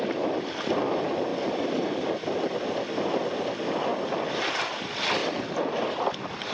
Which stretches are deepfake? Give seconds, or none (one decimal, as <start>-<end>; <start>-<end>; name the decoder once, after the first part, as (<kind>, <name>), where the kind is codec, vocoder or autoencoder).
1.3-2.2 (vocoder, BigVGAN v2); 5.2-6.5